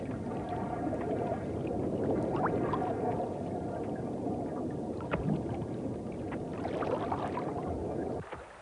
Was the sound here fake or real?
real